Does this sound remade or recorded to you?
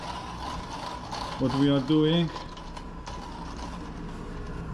recorded